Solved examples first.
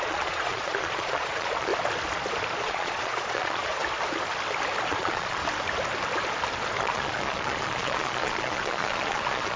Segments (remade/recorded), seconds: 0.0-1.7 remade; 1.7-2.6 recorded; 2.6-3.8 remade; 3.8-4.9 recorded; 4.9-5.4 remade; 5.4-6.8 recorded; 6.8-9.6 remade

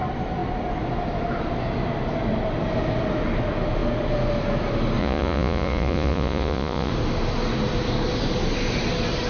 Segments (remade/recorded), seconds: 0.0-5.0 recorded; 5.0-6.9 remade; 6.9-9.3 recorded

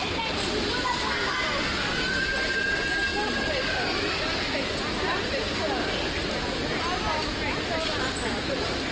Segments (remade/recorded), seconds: 0.0-8.9 recorded

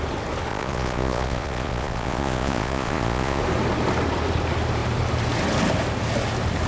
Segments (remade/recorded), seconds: 0.0-0.5 recorded; 0.5-3.4 remade; 3.4-6.7 recorded

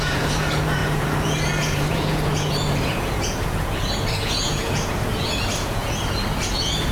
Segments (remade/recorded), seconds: 0.0-6.9 remade